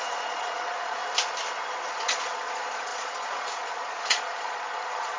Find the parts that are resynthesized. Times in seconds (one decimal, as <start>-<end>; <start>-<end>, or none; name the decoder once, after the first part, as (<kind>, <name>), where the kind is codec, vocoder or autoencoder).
0.0-1.0 (vocoder, Vocos); 1.9-5.2